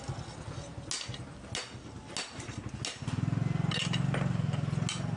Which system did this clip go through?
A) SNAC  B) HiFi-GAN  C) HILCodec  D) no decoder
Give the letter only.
D